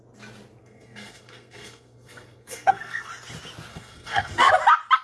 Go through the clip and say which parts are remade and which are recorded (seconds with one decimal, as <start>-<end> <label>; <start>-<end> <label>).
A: 0.0-0.6 recorded; 0.6-3.1 remade; 3.1-3.7 recorded; 3.7-4.5 remade; 4.5-5.0 recorded